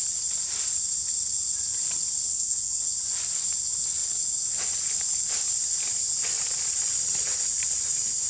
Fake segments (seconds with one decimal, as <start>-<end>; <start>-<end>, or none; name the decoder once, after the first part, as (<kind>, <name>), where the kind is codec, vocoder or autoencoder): 2.3-2.8 (codec, SNAC)

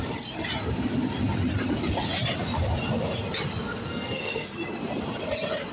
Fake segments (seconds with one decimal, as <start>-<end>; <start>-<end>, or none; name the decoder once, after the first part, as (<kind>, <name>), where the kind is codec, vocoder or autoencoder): 3.8-4.5 (codec, SNAC)

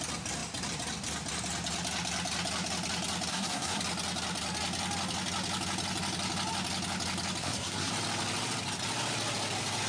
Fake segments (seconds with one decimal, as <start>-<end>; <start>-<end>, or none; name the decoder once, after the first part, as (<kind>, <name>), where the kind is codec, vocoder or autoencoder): 3.3-3.8 (codec, SNAC); 7.4-7.9

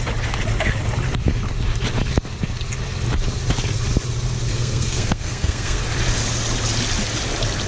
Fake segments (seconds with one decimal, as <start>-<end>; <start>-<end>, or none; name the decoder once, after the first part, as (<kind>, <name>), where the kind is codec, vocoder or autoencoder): 4.5-5.8 (codec, SNAC)

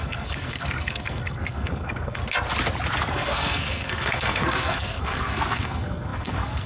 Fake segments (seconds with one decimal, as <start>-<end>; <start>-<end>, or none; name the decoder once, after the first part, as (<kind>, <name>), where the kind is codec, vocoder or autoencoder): 0.0-2.2 (codec, SNAC); 3.1-6.7